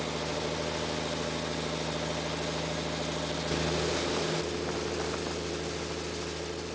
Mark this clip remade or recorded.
recorded